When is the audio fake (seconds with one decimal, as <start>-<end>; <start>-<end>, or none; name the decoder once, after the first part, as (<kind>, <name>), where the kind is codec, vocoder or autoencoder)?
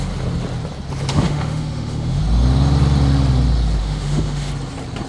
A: 1.1-2.2 (autoencoder, DAC-VAE); 3.8-4.5